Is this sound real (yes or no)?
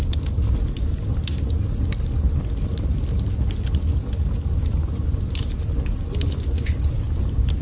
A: yes